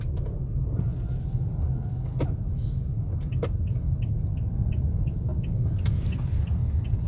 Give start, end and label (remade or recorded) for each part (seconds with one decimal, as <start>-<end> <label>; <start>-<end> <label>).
0.0-7.1 recorded